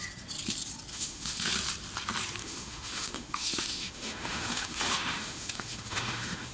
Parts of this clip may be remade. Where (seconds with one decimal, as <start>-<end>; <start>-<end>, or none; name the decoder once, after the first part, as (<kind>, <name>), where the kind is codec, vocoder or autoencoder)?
0.9-1.5 (autoencoder, DAC-VAE); 2.4-6.5